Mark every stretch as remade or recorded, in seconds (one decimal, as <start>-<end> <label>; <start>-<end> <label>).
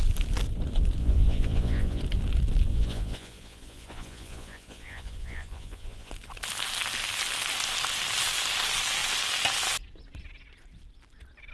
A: 0.0-1.0 recorded; 1.0-2.0 remade; 2.0-2.7 recorded; 2.7-6.1 remade; 6.1-11.5 recorded